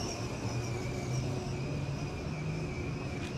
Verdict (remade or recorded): recorded